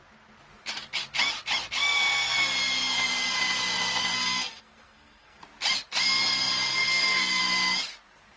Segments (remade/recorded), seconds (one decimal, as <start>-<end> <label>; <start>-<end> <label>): 0.0-4.1 recorded; 4.1-5.4 remade; 5.4-6.7 recorded; 6.7-7.4 remade; 7.4-8.4 recorded